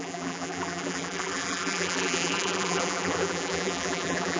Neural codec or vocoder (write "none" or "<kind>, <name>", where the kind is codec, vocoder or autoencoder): vocoder, BigVGAN v2